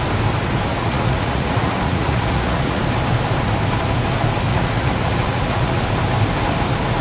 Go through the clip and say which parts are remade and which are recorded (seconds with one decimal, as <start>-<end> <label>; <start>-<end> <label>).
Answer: 0.0-0.7 recorded; 0.7-2.8 remade; 2.8-4.5 recorded; 4.5-5.9 remade; 5.9-7.0 recorded